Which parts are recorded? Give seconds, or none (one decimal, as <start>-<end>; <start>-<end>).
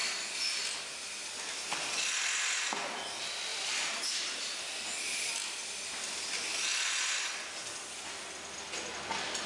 0.0-3.5; 4.6-9.5